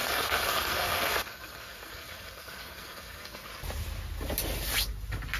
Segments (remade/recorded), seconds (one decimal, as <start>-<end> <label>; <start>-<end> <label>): 0.0-3.5 remade; 3.5-5.4 recorded